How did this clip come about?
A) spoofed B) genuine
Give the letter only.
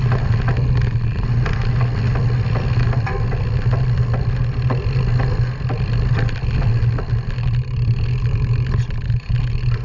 B